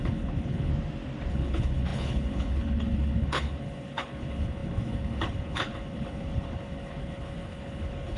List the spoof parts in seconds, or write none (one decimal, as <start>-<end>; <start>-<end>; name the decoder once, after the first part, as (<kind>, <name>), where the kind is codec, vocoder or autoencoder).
0.0-0.7 (codec, HILCodec); 1.3-8.2